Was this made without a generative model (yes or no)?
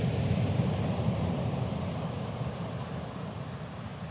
no